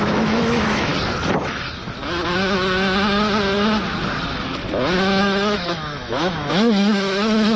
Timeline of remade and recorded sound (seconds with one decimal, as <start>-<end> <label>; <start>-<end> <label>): 0.0-0.9 remade; 0.9-1.4 recorded; 1.4-1.8 remade; 1.8-5.2 recorded; 5.2-7.6 remade